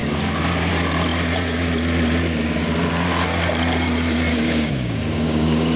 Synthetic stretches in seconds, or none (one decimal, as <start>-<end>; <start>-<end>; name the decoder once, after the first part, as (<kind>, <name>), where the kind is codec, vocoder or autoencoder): 4.3-5.8 (codec, DAC)